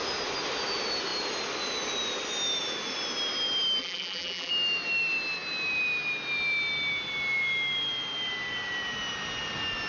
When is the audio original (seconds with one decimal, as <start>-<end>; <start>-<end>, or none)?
0.0-3.8; 4.5-9.9